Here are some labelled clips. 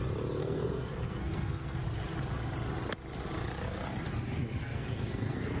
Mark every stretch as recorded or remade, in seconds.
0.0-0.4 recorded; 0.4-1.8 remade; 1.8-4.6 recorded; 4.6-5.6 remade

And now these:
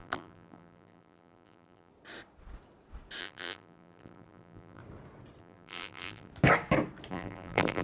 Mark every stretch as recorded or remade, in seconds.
0.0-1.9 remade; 1.9-3.2 recorded; 3.2-4.8 remade; 4.8-5.4 recorded; 5.4-6.3 remade; 6.3-7.1 recorded; 7.1-7.8 remade

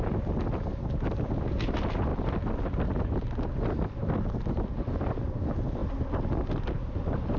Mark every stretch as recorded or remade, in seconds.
0.0-7.4 recorded

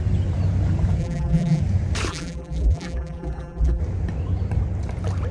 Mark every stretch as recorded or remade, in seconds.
0.0-1.0 recorded; 1.0-1.6 remade; 1.6-2.1 recorded; 2.1-3.8 remade; 3.8-5.3 recorded